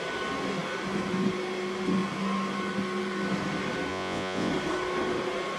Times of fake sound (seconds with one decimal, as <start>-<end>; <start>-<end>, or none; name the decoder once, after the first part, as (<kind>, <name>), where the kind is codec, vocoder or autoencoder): 3.9-4.5 (vocoder, Vocos)